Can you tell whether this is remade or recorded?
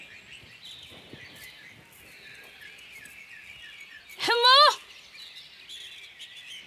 recorded